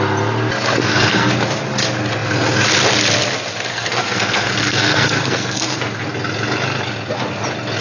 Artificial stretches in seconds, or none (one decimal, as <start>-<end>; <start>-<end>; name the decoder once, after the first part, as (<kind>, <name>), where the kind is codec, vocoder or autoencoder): 0.8-1.3 (codec, SNAC); 3.7-5.8